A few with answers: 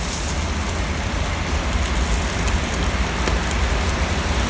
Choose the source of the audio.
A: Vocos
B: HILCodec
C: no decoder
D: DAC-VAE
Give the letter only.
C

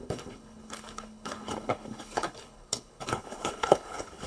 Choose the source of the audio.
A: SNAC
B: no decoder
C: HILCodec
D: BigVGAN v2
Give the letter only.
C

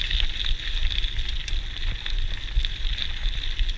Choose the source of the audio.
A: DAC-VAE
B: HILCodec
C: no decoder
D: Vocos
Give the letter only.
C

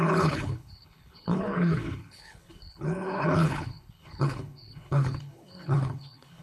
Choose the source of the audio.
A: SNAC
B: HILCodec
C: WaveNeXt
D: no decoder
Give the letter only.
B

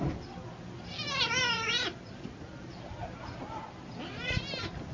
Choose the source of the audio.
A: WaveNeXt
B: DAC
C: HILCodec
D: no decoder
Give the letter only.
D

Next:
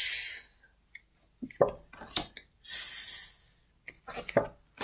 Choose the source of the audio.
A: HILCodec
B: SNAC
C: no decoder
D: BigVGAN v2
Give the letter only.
C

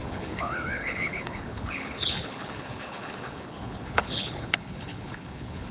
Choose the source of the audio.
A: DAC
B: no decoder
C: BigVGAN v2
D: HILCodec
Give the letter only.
D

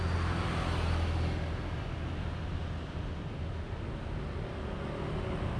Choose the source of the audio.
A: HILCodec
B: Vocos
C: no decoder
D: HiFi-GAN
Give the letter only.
C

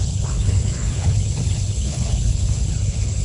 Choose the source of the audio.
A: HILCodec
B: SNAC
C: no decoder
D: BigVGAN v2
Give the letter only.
A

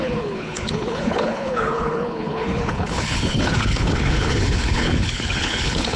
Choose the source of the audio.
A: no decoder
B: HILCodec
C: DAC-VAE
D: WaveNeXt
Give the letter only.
B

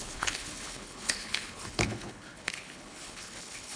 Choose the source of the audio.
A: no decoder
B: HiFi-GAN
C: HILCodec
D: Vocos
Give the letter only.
C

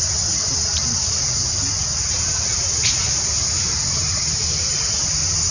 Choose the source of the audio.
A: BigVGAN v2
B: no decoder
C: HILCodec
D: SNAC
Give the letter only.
B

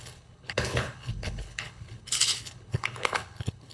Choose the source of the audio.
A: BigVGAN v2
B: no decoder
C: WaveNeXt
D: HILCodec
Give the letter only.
D